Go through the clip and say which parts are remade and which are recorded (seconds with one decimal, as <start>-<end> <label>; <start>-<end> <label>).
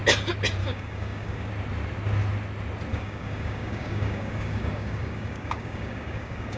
0.0-0.6 recorded; 0.6-1.5 remade; 1.5-2.9 recorded; 2.9-6.6 remade